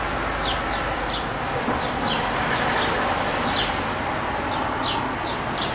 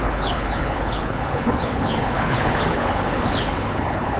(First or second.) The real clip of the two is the first